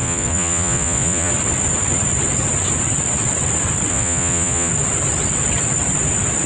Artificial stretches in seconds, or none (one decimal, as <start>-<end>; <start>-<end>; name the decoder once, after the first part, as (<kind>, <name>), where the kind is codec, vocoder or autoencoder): 0.0-1.3 (vocoder, Vocos); 3.9-4.7

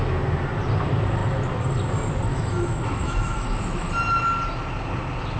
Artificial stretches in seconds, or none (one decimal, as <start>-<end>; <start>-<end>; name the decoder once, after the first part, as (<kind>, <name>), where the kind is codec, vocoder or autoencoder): 2.3-3.9 (autoencoder, DAC-VAE)

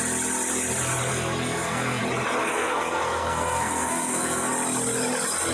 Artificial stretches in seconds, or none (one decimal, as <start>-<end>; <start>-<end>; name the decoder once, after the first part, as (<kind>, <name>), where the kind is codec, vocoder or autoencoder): 1.1-2.0 (codec, SNAC); 2.4-4.5

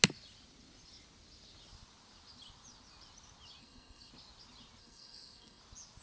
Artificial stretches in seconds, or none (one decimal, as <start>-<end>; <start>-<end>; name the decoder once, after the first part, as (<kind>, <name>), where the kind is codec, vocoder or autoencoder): 3.6-4.1 (codec, SNAC); 4.8-5.6

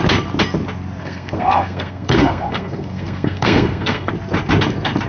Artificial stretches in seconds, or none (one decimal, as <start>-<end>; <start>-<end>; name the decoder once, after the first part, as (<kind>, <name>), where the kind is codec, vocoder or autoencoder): 1.0-4.1 (codec, SNAC)

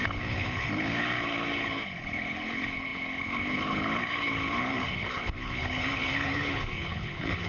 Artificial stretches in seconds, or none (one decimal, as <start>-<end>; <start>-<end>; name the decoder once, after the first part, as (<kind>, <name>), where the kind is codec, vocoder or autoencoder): 0.0-7.5 (codec, HILCodec)

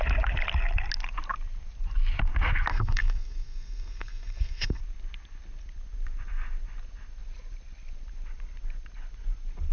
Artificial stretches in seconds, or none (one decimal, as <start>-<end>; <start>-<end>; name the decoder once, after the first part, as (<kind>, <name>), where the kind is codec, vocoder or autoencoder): 2.7-4.8 (codec, SNAC)